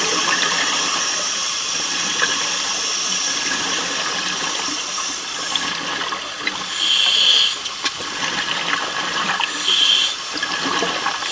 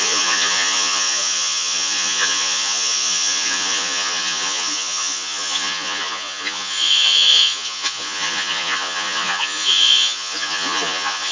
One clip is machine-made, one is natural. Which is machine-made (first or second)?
second